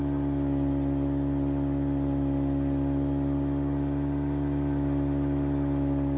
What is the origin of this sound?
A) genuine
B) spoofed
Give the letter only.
A